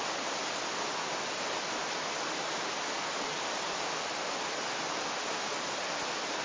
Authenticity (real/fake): real